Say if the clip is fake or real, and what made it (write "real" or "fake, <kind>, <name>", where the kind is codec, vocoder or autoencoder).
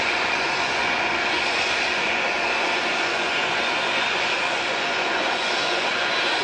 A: fake, vocoder, Vocos